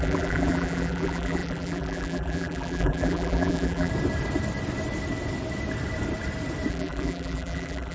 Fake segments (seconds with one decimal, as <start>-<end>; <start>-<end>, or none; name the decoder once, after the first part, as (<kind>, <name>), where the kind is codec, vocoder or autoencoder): 0.0-3.9 (vocoder, BigVGAN v2); 6.7-7.9